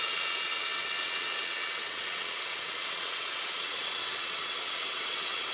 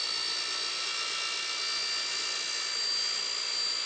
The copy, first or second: first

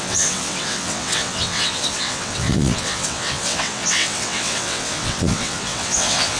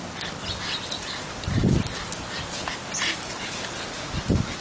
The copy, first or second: first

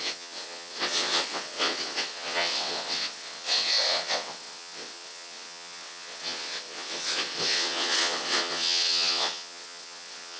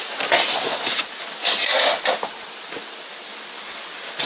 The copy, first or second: first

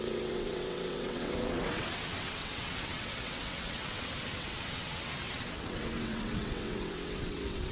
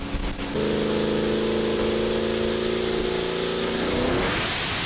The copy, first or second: first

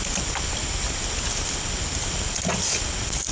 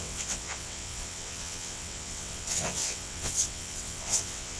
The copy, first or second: second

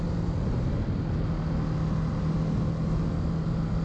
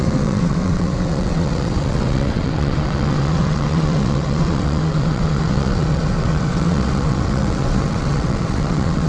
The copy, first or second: second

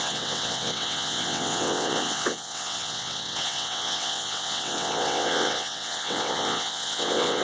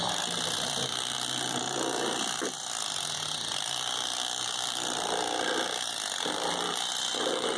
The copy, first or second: first